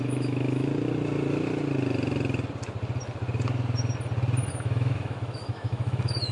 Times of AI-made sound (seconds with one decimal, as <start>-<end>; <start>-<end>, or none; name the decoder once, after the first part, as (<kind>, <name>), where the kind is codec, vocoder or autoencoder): 0.0-0.7 (autoencoder, DAC-VAE); 4.5-6.3